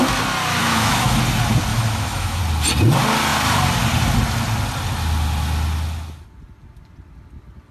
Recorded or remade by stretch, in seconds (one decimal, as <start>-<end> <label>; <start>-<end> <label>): 0.0-0.6 recorded; 0.6-1.2 remade; 1.2-1.7 recorded; 1.7-2.4 remade; 2.4-7.7 recorded